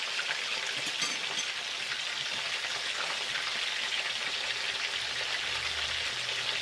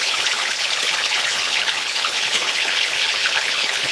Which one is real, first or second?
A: first